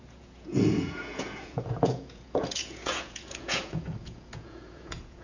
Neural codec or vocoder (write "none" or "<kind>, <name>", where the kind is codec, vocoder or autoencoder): vocoder, Vocos